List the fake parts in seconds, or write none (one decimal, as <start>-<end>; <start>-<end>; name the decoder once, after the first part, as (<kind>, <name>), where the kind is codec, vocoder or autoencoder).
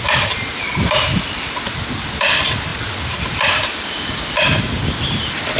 none